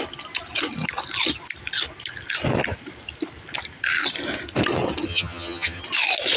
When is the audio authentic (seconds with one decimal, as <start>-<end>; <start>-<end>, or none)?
0.0-5.1; 5.8-6.4